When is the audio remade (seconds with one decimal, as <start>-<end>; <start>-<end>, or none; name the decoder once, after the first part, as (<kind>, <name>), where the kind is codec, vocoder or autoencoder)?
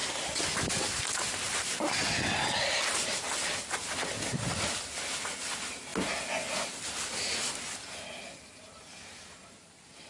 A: none